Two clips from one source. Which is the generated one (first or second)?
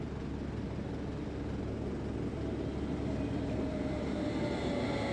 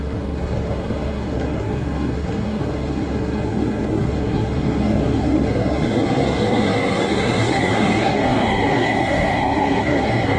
second